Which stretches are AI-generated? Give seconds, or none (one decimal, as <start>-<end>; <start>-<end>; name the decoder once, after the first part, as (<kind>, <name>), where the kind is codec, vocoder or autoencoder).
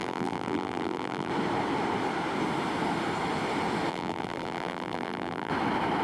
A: 0.0-1.3 (vocoder, BigVGAN v2); 3.9-5.5